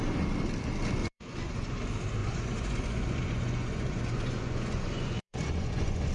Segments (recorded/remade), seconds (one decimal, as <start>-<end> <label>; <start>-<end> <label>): 0.0-1.0 recorded; 1.0-1.8 remade; 1.8-2.2 recorded; 2.2-6.1 remade